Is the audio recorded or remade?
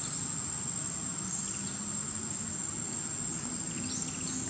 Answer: recorded